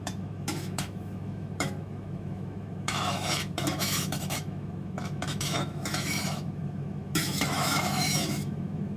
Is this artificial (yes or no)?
yes